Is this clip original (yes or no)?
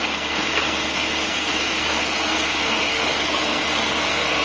no